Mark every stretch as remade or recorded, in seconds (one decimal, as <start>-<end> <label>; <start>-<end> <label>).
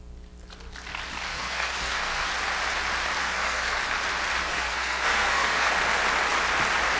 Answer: 0.0-1.3 recorded; 1.3-2.3 remade; 2.3-3.2 recorded; 3.2-3.8 remade; 3.8-4.4 recorded; 4.4-5.7 remade; 5.7-7.0 recorded